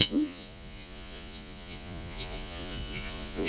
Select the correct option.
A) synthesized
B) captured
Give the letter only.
A